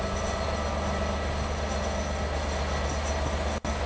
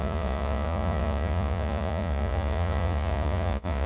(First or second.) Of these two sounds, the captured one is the first